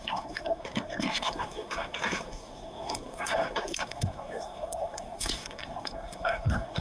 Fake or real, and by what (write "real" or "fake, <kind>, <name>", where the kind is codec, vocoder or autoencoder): fake, codec, SNAC